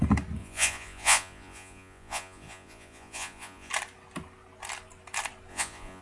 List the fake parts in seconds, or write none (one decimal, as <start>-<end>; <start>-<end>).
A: 0.4-3.7; 5.5-6.0